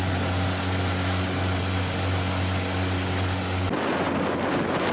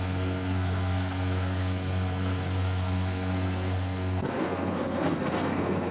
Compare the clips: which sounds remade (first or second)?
second